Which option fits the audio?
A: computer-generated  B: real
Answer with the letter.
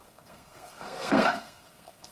A